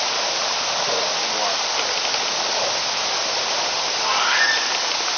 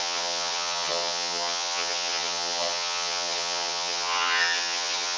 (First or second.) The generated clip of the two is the second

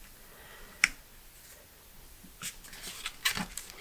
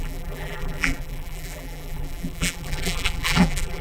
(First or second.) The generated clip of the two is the second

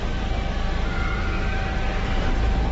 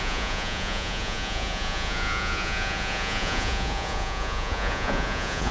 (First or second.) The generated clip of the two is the second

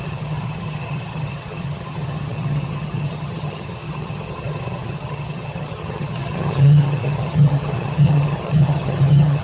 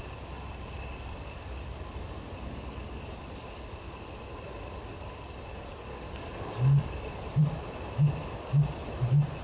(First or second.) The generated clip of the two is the first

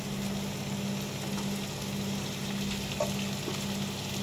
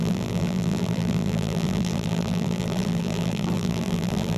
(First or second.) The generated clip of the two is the second